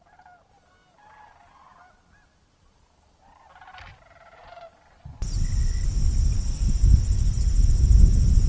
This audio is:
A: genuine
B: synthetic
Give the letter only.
A